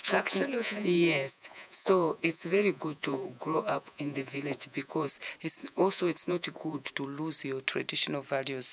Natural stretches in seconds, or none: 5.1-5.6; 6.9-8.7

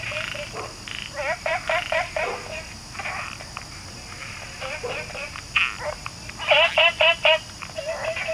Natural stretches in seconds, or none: 0.0-8.3